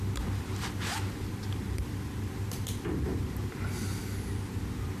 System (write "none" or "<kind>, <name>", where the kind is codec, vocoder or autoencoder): vocoder, BigVGAN v2